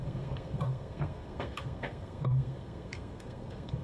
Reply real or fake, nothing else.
fake